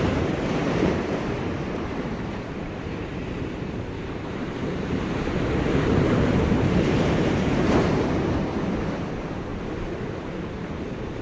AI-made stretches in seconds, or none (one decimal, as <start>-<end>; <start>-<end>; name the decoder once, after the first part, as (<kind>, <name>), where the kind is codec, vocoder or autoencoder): 0.0-9.5 (vocoder, BigVGAN v2); 10.6-11.2